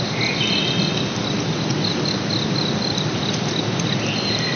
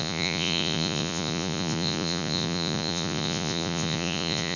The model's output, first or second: second